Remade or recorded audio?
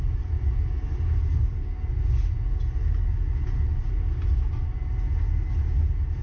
recorded